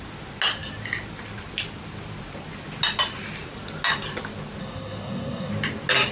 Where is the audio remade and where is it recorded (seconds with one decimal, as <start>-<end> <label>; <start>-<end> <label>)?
0.0-4.6 recorded; 4.6-5.5 remade; 5.5-6.1 recorded